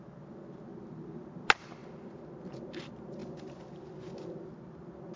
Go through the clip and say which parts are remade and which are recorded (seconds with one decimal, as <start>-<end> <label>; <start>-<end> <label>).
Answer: 0.0-5.2 recorded